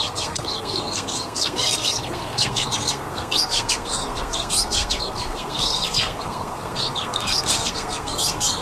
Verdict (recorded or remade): remade